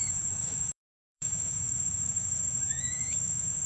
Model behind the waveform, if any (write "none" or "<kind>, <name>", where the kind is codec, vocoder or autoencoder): autoencoder, DAC-VAE